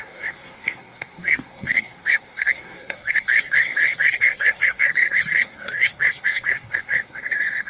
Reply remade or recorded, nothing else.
remade